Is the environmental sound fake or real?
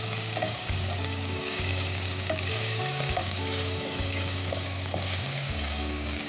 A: fake